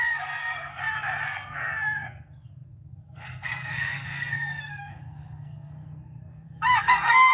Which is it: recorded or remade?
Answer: remade